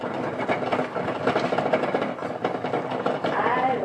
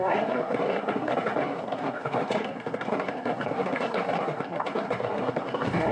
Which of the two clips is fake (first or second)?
second